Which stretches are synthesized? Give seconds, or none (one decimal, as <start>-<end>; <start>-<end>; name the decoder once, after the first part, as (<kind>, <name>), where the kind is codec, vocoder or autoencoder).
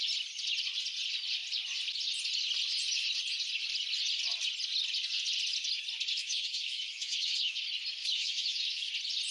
6.2-7.6 (autoencoder, DAC-VAE); 8.0-8.9